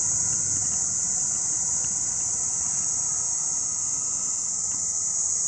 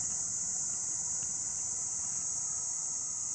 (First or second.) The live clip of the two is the first